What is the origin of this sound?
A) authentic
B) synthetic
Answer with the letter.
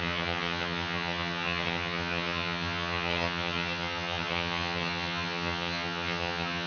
B